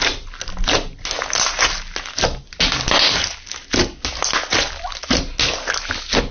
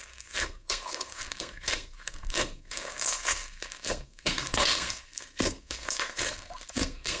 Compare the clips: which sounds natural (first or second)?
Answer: first